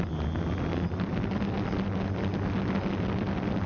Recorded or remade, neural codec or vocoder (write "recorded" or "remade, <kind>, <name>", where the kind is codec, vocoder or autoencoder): recorded